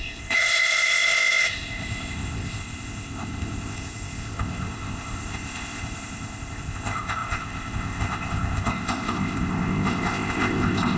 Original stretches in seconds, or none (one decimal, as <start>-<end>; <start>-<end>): none